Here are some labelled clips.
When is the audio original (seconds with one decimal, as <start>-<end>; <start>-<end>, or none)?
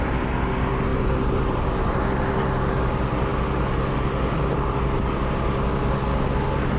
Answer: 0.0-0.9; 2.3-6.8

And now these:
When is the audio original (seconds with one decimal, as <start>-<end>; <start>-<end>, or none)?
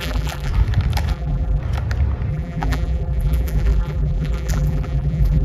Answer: 0.5-1.1; 1.6-2.3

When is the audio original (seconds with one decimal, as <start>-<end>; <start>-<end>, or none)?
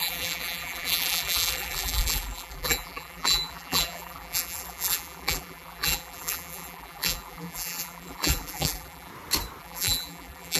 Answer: 9.1-9.6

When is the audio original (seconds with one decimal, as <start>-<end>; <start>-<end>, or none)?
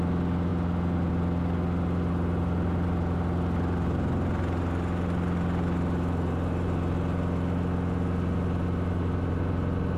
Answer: 0.0-10.0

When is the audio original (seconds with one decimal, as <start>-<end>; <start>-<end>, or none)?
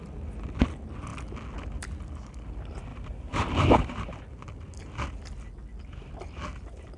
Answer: 0.0-2.9; 4.2-7.0